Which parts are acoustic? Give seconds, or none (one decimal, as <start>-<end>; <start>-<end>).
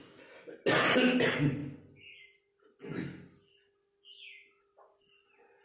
0.0-5.6